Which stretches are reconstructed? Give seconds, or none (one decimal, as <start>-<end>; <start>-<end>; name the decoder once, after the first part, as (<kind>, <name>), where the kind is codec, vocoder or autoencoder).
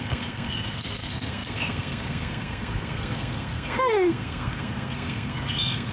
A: 0.0-5.9 (codec, SNAC)